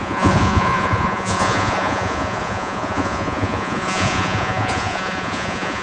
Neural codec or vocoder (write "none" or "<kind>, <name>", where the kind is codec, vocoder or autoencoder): vocoder, Vocos